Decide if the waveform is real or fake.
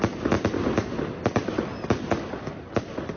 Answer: real